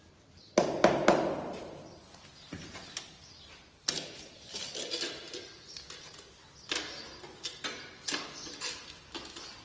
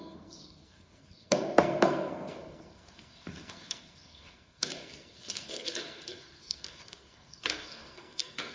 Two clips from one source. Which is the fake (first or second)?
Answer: second